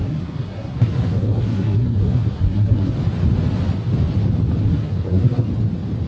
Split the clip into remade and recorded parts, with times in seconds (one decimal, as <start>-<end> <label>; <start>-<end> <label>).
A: 0.0-2.9 remade; 2.9-4.6 recorded; 4.6-5.5 remade; 5.5-6.1 recorded